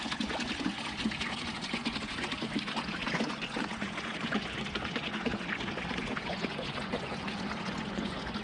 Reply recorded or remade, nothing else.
remade